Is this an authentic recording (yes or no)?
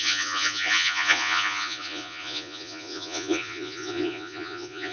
no